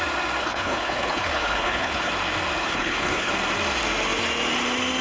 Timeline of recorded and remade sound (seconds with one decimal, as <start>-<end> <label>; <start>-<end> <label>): 0.0-0.4 recorded; 0.4-2.1 remade; 2.1-2.6 recorded; 2.6-3.3 remade; 3.3-5.0 recorded